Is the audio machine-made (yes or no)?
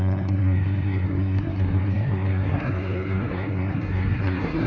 yes